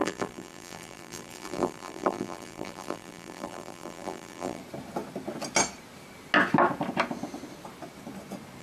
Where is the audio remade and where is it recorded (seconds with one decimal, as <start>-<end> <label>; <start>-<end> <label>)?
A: 0.0-4.6 remade; 4.6-8.6 recorded